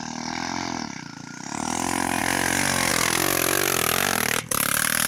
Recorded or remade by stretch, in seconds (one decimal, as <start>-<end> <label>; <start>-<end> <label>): 0.0-5.1 recorded